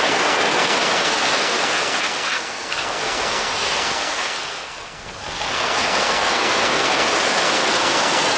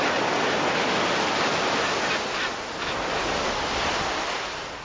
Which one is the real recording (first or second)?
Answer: second